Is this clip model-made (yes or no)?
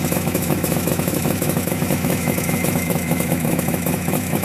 yes